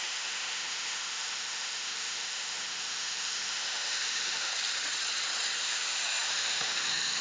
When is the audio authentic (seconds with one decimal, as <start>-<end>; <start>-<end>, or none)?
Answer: 4.5-5.6